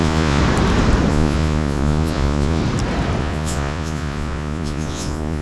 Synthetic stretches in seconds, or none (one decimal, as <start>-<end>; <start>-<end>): 0.0-0.4; 1.1-2.6; 3.2-5.4